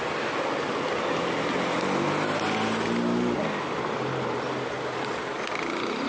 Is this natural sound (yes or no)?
yes